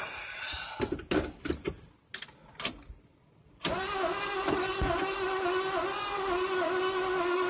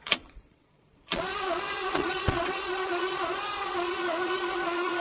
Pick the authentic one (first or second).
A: first